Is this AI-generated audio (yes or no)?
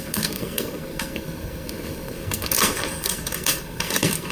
yes